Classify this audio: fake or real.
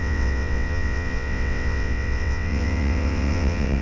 fake